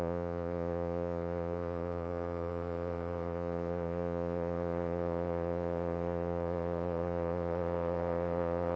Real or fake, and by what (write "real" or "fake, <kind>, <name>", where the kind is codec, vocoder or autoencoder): fake, vocoder, Vocos